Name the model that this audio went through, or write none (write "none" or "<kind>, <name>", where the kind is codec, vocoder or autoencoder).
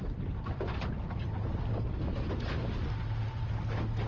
none